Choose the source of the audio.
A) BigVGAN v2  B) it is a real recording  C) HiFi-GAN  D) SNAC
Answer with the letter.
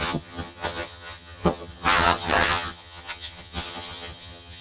C